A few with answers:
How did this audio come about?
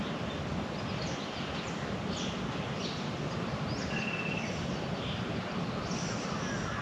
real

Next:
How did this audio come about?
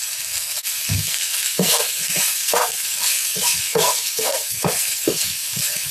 fake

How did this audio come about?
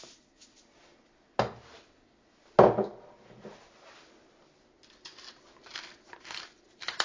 real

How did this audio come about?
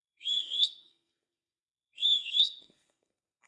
fake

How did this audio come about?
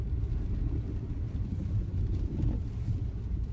fake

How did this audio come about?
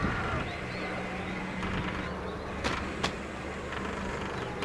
real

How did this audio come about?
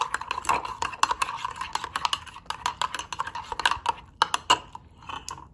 real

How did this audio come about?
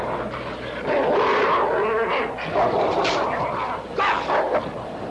real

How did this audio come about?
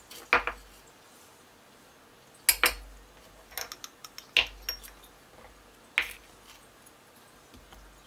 real